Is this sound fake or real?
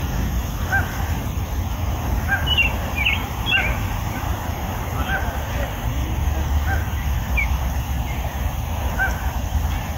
real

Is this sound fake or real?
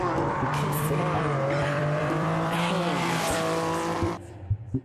fake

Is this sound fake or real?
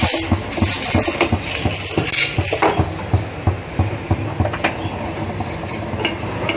real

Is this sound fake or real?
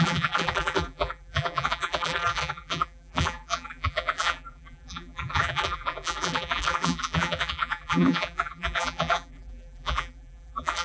fake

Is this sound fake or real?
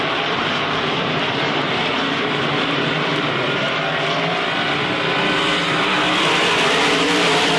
fake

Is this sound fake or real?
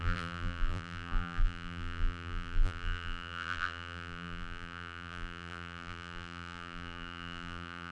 fake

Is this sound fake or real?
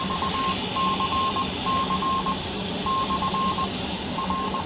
real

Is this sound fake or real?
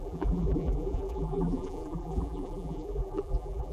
fake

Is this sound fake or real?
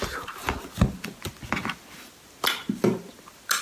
real